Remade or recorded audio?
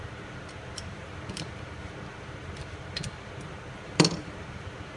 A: remade